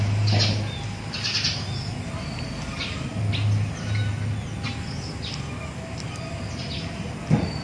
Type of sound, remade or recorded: recorded